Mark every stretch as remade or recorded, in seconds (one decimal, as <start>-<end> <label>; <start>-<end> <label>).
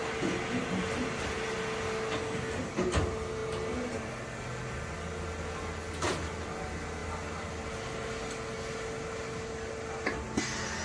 0.0-10.8 recorded